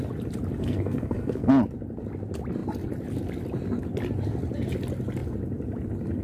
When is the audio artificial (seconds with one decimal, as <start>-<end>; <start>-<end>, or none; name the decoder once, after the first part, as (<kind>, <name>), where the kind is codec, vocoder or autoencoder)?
0.6-1.5 (codec, SNAC)